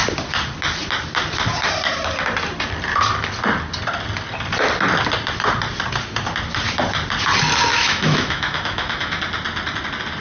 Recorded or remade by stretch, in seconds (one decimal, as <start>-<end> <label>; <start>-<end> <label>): 0.0-7.7 recorded; 7.7-9.2 remade; 9.2-10.2 recorded